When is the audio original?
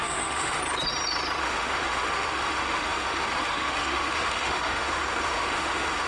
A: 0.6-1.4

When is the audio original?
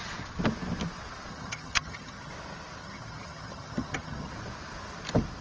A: 0.0-1.3; 2.3-2.8; 4.3-5.4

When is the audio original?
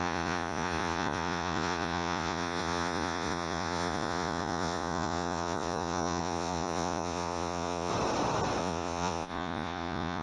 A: 7.9-8.6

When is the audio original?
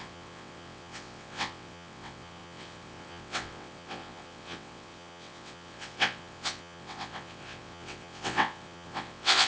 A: none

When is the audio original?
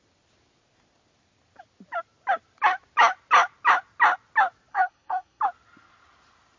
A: 0.0-4.7; 5.4-6.6